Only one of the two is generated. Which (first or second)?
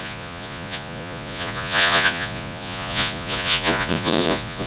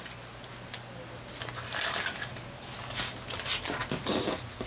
first